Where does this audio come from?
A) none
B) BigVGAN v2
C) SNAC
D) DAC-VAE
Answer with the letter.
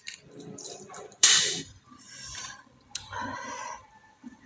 B